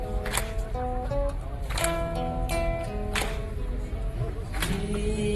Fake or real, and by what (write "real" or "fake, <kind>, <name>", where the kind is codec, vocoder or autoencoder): real